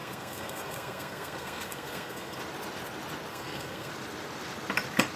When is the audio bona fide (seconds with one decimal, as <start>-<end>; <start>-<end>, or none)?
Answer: 2.4-3.3; 3.9-5.2